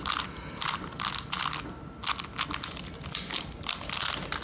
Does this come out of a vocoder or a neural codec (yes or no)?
no